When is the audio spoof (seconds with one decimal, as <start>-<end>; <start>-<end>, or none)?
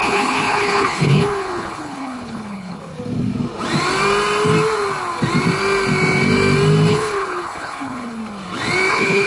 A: 0.0-2.9; 6.9-8.2; 8.9-9.3